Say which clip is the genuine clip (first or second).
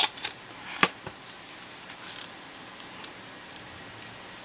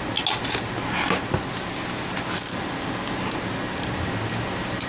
second